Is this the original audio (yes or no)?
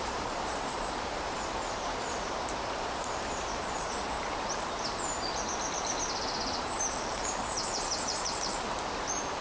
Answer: no